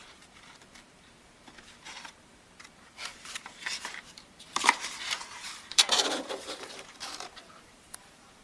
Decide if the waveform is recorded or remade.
remade